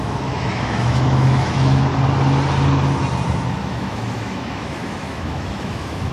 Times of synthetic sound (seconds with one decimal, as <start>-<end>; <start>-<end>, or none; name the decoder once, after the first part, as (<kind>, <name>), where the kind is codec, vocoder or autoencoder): 0.0-1.9 (autoencoder, DAC-VAE); 3.5-6.1